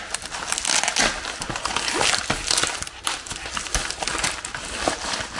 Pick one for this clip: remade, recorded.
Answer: recorded